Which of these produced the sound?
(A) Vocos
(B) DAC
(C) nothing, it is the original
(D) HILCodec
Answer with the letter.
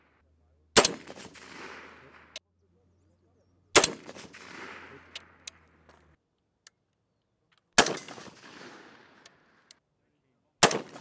C